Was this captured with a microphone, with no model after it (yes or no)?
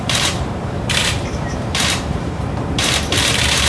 no